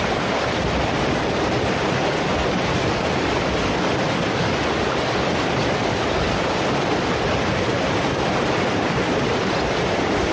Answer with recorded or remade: recorded